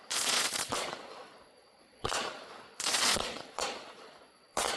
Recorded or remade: remade